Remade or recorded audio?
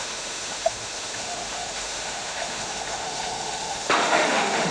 remade